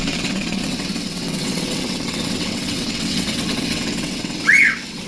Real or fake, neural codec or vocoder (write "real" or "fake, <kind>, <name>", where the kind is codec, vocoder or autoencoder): fake, vocoder, WaveNeXt